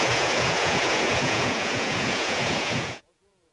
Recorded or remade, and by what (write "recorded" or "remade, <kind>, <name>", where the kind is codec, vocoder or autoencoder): remade, vocoder, Vocos